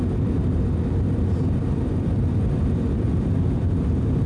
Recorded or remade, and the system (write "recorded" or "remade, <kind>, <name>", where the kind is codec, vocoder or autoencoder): remade, vocoder, BigVGAN v2